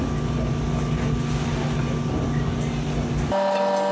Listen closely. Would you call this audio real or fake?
real